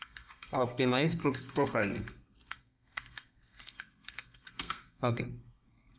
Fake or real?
fake